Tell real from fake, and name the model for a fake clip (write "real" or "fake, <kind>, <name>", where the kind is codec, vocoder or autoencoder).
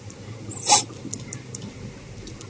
real